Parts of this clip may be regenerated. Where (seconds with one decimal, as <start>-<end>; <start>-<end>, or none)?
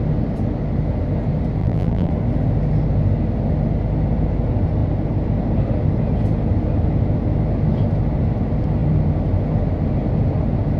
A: 1.6-2.1